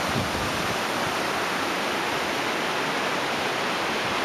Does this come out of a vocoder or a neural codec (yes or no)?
no